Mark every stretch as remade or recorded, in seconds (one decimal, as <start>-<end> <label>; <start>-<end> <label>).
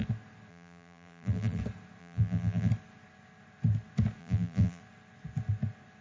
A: 0.0-0.5 recorded; 0.5-1.6 remade; 1.6-2.0 recorded; 2.0-2.7 remade; 2.7-4.2 recorded; 4.2-4.8 remade; 4.8-6.0 recorded